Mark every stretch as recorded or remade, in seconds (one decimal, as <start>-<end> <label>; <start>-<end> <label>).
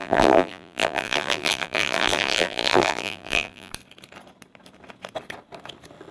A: 0.0-3.7 remade; 3.7-6.1 recorded